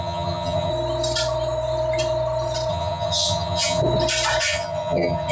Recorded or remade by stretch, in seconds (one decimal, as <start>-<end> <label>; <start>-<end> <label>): 0.0-0.7 remade; 0.7-2.7 recorded; 2.7-3.8 remade; 3.8-4.4 recorded; 4.4-5.3 remade